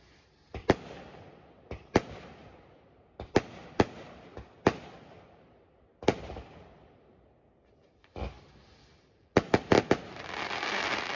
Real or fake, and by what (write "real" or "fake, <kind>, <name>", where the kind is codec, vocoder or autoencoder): real